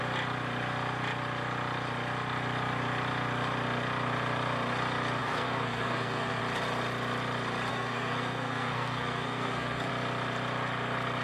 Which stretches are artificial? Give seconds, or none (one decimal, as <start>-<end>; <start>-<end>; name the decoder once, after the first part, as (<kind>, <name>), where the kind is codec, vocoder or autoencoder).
5.2-6.4 (codec, SNAC); 7.7-9.9